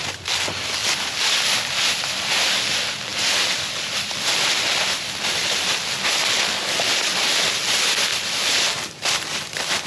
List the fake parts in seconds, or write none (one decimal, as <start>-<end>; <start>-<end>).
8.1-9.0